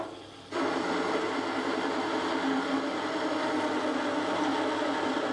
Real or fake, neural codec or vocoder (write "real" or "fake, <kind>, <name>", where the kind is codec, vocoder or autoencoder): real